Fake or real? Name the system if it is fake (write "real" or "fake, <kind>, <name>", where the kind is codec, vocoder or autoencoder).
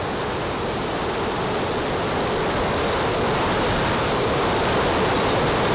real